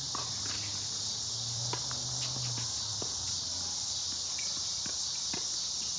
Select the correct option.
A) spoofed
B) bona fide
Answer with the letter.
B